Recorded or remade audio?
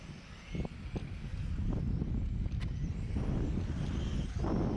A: recorded